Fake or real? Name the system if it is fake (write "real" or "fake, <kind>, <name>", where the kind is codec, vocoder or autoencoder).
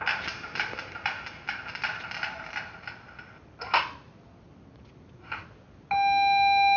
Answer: real